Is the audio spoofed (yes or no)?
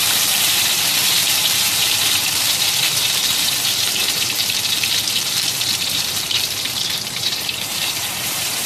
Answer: yes